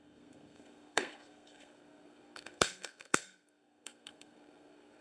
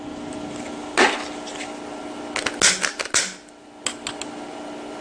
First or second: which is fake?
first